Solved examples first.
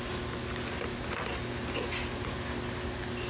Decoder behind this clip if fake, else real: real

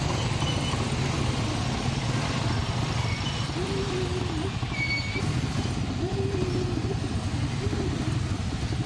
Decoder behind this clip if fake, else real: real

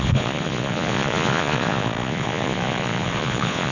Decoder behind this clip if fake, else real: fake, vocoder, Vocos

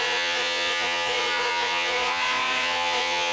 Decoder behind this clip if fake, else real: fake, vocoder, Vocos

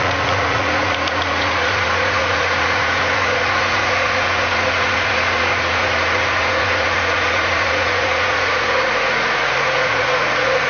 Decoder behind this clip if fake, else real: fake, vocoder, Vocos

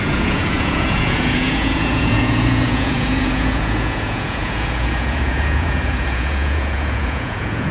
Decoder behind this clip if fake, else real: fake, vocoder, Vocos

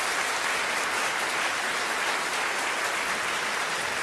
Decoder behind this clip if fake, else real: real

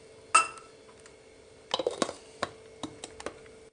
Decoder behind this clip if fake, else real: real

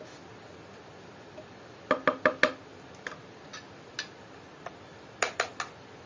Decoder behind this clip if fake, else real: real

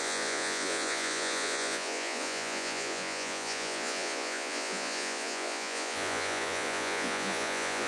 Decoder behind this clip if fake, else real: fake, vocoder, Vocos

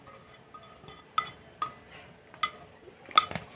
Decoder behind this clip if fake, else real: real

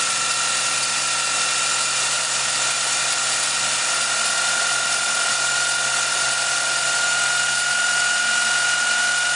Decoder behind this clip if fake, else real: real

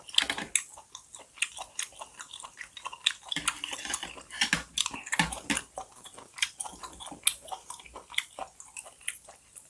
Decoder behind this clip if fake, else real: real